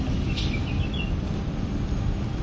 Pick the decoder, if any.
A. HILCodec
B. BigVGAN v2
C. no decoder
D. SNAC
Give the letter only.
C